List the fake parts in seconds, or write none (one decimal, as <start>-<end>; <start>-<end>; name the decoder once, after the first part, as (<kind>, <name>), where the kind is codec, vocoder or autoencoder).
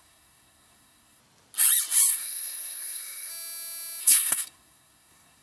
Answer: 0.0-1.2 (codec, SNAC); 2.1-3.3; 4.0-5.4